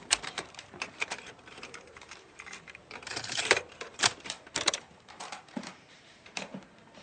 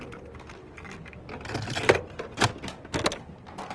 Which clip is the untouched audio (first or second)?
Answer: second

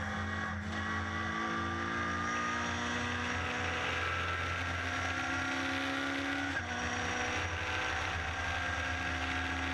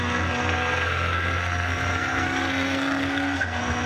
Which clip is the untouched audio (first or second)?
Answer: first